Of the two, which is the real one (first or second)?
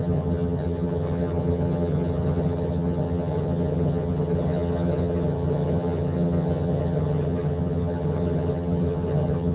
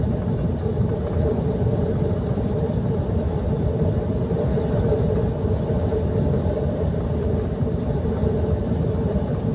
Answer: second